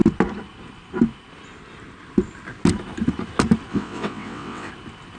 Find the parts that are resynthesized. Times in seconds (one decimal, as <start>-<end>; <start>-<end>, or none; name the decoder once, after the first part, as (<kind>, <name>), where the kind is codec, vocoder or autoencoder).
3.7-4.7 (vocoder, WaveNeXt)